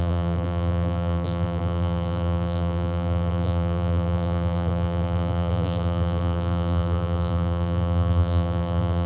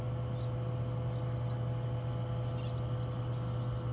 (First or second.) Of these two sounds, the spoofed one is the first